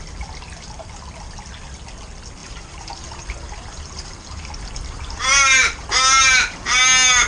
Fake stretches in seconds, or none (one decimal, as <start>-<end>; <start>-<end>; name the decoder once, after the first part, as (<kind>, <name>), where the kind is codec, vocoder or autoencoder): 2.4-6.8 (vocoder, BigVGAN v2)